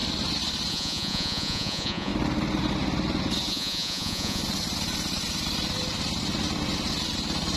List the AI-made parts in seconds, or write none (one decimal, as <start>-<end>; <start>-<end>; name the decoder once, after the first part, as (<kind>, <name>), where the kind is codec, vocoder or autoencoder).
0.7-2.1 (vocoder, Vocos); 3.5-4.4